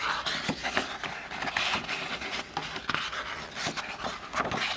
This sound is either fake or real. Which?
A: real